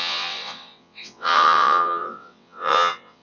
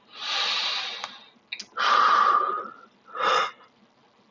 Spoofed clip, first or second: first